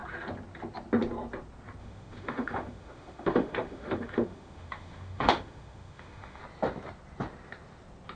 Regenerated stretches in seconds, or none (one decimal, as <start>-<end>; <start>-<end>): 1.8-6.4

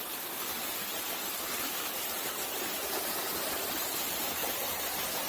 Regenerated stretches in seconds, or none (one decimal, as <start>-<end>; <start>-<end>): 0.5-3.7; 4.4-5.3

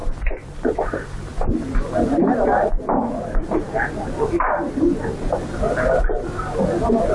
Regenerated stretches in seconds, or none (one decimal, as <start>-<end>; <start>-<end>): 0.0-0.9; 1.3-5.3